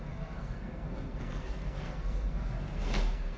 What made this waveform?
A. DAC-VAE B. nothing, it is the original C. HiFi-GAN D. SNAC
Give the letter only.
D